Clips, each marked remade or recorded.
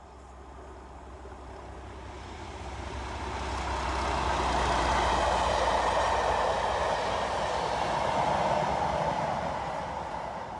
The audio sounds recorded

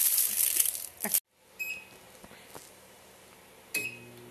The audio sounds recorded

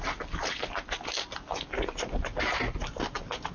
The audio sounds recorded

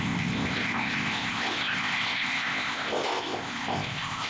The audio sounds remade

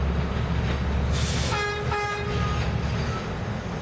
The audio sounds recorded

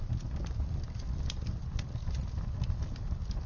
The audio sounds recorded